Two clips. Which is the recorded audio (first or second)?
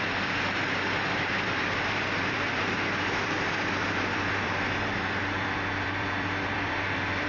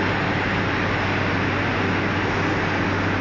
second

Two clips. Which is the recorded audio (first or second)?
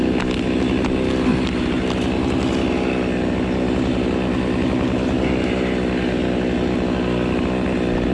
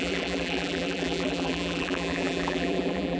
first